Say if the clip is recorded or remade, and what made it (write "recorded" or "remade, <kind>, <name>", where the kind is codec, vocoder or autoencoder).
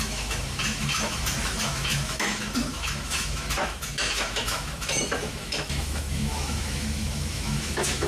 remade, autoencoder, DAC-VAE